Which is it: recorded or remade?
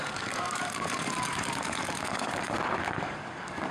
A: remade